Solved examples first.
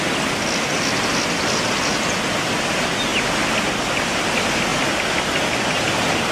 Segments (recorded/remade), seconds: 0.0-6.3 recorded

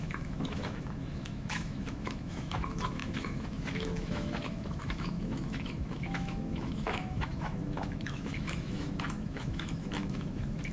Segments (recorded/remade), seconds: 0.0-10.7 remade

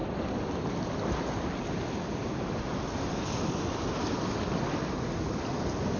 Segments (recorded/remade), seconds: 0.0-6.0 recorded